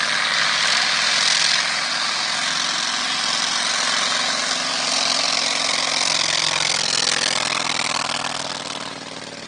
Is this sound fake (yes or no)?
no